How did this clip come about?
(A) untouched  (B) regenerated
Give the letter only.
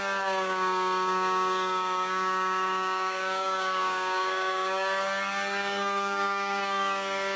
B